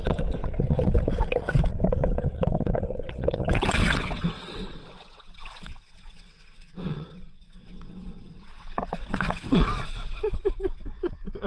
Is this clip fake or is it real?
fake